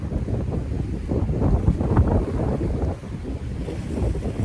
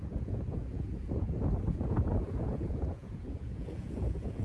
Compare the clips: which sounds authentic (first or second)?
first